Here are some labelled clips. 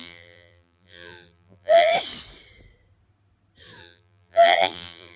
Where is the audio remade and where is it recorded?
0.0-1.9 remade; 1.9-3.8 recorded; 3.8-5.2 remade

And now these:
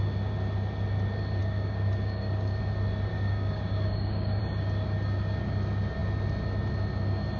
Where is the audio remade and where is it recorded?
0.0-1.4 recorded; 1.4-2.6 remade; 2.6-3.1 recorded; 3.1-4.4 remade; 4.4-7.4 recorded

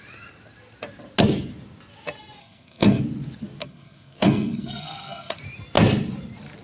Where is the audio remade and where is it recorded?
0.0-2.4 recorded; 2.4-3.0 remade; 3.0-3.6 recorded; 3.6-5.4 remade; 5.4-6.6 recorded